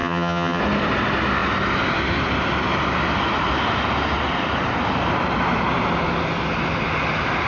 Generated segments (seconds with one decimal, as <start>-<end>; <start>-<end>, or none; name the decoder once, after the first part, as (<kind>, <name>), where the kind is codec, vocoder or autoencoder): 0.0-0.6 (vocoder, HiFi-GAN)